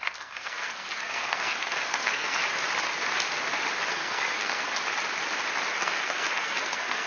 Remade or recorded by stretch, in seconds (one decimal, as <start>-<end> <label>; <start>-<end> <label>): 0.0-2.4 remade; 2.4-3.9 recorded; 3.9-4.7 remade; 4.7-5.8 recorded; 5.8-7.1 remade